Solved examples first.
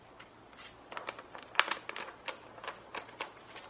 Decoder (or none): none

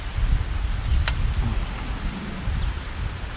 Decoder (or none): none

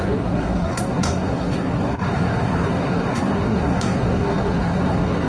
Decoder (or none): codec, SNAC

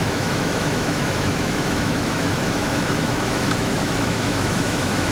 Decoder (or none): autoencoder, DAC-VAE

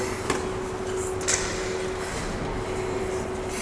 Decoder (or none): none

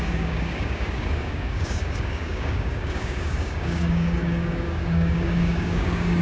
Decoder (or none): codec, DAC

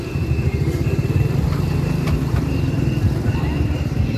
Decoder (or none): vocoder, BigVGAN v2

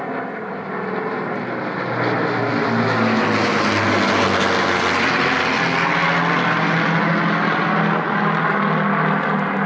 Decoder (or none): none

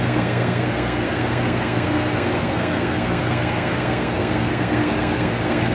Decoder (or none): codec, SNAC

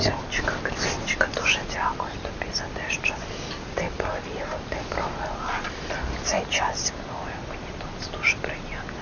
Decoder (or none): none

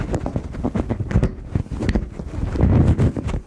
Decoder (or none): none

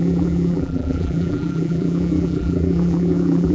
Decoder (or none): vocoder, BigVGAN v2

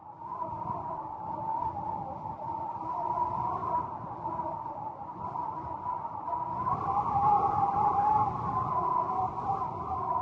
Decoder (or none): none